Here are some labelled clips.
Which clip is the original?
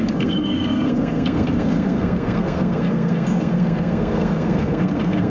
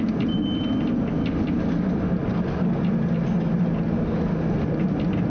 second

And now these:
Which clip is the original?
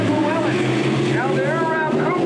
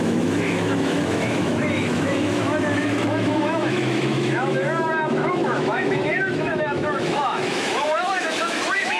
first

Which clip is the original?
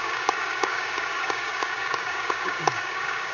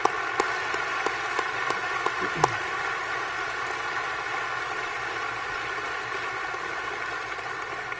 second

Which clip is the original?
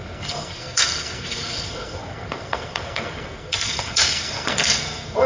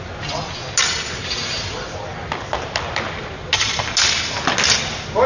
second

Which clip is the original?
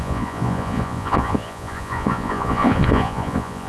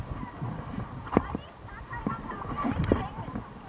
second